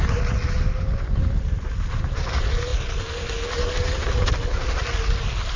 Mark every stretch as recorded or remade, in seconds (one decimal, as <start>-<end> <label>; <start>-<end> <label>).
0.0-5.6 recorded